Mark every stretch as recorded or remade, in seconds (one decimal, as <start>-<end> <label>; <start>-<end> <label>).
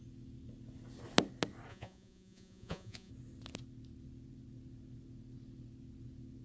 0.0-1.7 recorded; 1.7-3.1 remade; 3.1-6.4 recorded